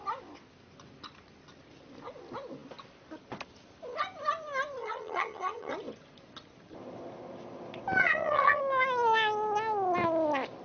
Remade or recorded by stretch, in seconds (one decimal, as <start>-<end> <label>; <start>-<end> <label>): 0.0-4.8 recorded; 4.8-5.7 remade; 5.7-8.0 recorded; 8.0-8.6 remade; 8.6-10.6 recorded